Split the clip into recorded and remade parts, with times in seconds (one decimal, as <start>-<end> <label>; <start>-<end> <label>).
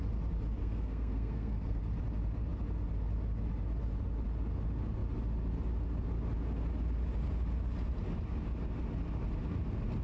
0.0-0.6 recorded; 0.6-1.8 remade; 1.8-10.0 recorded